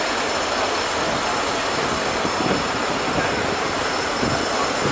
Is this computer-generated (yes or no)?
no